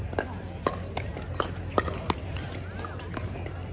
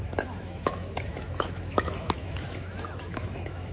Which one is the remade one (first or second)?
second